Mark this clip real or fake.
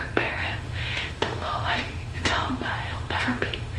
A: fake